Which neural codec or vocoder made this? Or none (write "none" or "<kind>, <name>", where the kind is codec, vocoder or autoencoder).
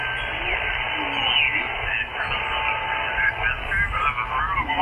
none